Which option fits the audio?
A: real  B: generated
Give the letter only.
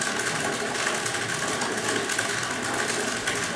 A